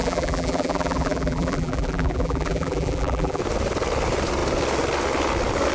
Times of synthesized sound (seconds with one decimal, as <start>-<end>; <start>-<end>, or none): 0.0-3.4